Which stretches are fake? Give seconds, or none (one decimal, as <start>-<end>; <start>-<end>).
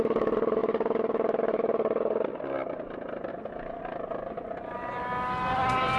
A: none